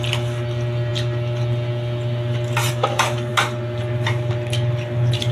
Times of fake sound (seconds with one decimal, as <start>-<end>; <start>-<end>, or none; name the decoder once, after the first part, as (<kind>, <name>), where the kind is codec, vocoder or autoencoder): 3.3-4.3 (vocoder, BigVGAN v2)